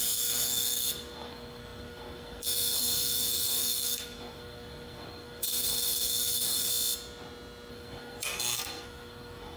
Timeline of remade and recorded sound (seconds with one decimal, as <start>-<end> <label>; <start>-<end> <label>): 0.0-6.7 remade; 6.7-7.7 recorded; 7.7-9.6 remade